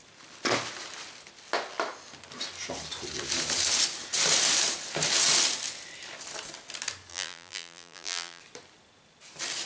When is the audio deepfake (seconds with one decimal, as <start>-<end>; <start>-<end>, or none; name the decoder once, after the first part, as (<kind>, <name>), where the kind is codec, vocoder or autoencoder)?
7.1-8.4 (vocoder, BigVGAN v2)